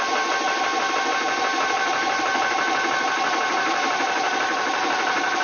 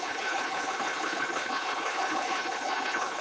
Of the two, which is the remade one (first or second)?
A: second